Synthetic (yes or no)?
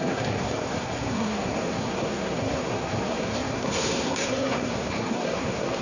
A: yes